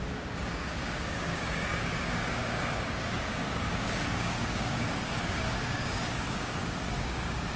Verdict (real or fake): fake